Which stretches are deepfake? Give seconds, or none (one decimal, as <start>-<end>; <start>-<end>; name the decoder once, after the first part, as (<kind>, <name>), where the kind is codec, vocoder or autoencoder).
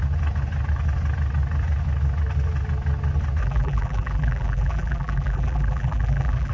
3.4-6.5 (vocoder, BigVGAN v2)